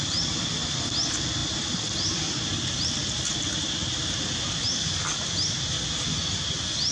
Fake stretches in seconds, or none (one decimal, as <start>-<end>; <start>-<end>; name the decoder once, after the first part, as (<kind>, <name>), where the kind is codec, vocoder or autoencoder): none